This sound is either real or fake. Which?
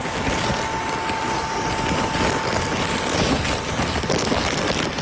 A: real